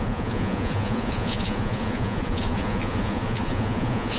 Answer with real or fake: fake